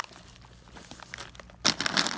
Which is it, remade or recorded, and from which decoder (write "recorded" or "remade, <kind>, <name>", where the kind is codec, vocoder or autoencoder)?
recorded